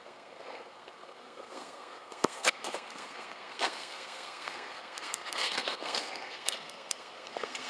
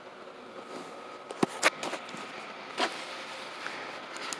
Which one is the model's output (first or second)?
first